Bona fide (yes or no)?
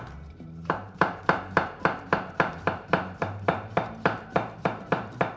no